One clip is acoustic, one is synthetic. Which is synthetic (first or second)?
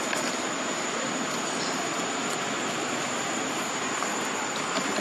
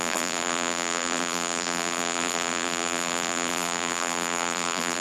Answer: second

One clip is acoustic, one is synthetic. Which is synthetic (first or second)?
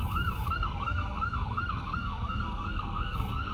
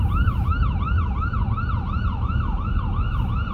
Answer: first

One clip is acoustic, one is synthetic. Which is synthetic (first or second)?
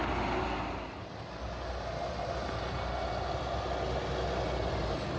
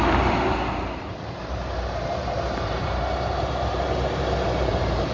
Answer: second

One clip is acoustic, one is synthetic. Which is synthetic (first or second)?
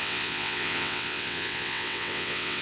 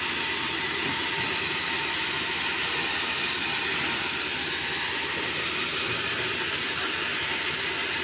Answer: first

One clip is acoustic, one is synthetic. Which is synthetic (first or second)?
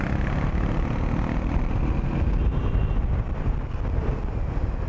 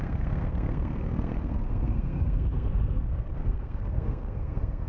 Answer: second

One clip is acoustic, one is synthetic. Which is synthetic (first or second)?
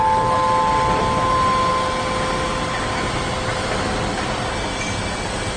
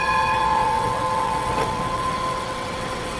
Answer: second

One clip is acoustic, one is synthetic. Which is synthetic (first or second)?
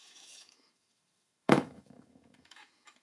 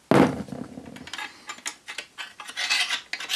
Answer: first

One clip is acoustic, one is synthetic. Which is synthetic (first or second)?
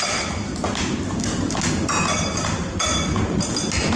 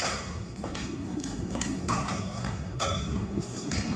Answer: second